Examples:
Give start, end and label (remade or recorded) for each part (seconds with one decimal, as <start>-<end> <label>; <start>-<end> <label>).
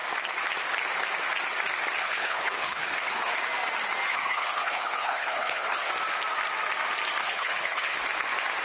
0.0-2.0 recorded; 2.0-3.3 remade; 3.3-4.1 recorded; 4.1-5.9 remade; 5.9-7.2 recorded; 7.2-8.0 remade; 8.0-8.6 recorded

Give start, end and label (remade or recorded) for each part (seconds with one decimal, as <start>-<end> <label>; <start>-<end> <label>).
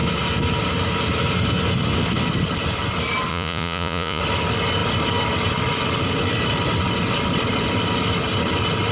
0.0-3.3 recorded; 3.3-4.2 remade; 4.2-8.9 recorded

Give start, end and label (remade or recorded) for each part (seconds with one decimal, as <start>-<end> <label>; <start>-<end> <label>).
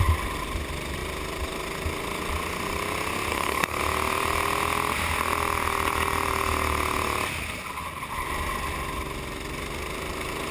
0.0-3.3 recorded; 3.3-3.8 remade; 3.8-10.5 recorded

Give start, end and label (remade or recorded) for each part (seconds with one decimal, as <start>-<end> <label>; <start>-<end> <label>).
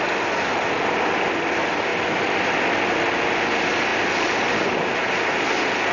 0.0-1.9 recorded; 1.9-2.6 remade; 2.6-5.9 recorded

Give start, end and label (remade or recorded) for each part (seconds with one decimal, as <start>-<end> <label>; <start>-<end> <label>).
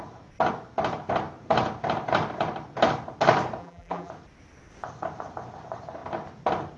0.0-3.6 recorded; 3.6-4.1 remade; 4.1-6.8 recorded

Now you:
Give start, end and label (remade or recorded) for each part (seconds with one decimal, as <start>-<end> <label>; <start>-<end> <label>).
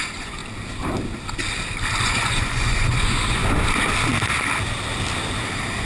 0.0-0.4 remade; 0.4-2.0 recorded; 2.0-3.4 remade; 3.4-5.8 recorded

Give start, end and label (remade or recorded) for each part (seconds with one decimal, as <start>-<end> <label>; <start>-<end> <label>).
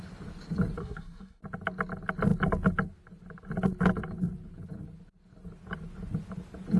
0.0-0.8 recorded; 0.8-1.4 remade; 1.4-6.8 recorded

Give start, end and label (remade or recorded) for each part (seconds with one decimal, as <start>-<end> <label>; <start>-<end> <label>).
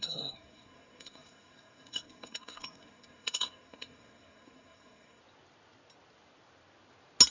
0.0-5.2 remade; 5.2-7.3 recorded